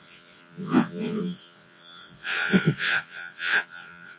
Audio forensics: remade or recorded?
remade